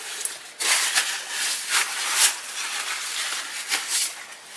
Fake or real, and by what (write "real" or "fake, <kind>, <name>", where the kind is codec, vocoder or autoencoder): real